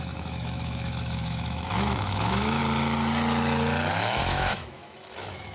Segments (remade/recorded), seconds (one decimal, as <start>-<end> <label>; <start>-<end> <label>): 0.0-2.6 remade; 2.6-3.9 recorded; 3.9-5.5 remade